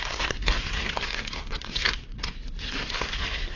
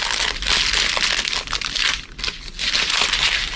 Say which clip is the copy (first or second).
first